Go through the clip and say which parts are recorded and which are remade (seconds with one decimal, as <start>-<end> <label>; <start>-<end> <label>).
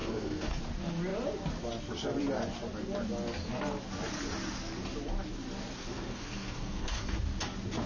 0.0-0.6 remade; 0.6-5.8 recorded; 5.8-7.2 remade; 7.2-7.9 recorded